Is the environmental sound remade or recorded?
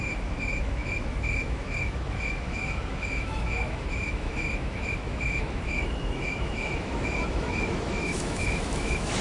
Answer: remade